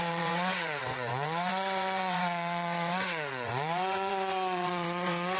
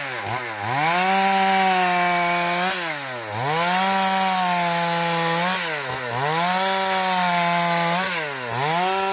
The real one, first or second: second